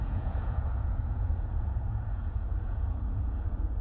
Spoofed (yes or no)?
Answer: yes